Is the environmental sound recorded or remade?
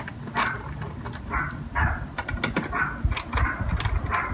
recorded